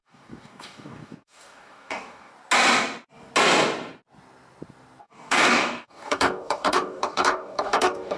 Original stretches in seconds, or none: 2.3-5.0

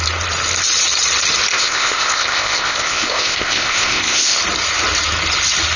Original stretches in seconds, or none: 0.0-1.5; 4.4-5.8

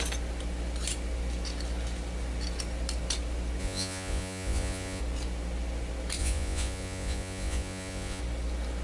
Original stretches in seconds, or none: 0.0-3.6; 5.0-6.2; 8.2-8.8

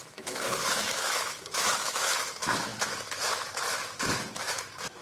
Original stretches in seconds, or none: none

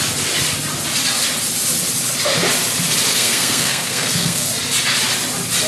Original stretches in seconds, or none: 0.0-3.1; 4.5-5.7

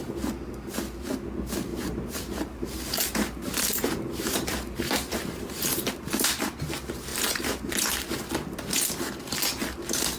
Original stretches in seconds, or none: 0.0-1.7; 5.9-7.1; 7.7-10.2

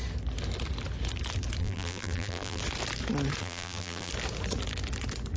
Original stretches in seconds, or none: 0.0-1.6; 2.6-3.4; 4.1-5.4

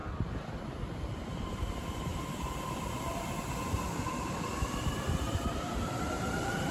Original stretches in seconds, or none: 0.0-1.5; 2.1-6.1